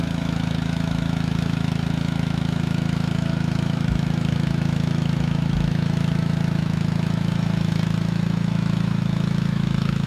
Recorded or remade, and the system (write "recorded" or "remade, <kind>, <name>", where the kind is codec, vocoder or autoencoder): remade, autoencoder, DAC-VAE